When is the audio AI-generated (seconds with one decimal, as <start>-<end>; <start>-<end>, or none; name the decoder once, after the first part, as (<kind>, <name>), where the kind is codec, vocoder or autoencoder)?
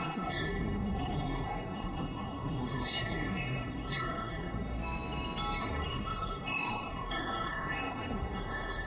0.0-4.8 (codec, SNAC); 5.6-8.9